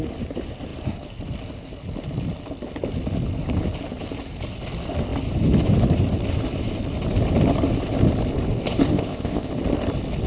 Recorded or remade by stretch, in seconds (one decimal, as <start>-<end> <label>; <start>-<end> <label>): 0.0-8.9 recorded; 8.9-9.5 remade; 9.5-10.3 recorded